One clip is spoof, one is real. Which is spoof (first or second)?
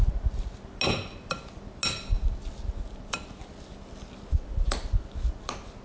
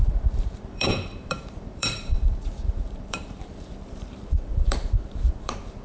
second